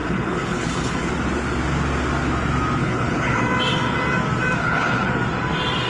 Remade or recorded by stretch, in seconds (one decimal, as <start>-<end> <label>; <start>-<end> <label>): 0.0-1.1 remade; 1.1-2.8 recorded; 2.8-3.4 remade; 3.4-4.6 recorded; 4.6-5.1 remade; 5.1-5.9 recorded